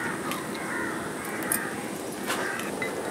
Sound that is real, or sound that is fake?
real